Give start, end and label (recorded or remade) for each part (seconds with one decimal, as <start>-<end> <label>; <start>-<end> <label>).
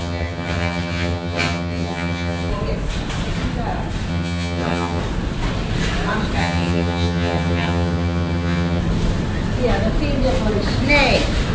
0.0-2.5 remade; 2.5-4.1 recorded; 4.1-5.0 remade; 5.0-6.4 recorded; 6.4-8.8 remade; 8.8-11.5 recorded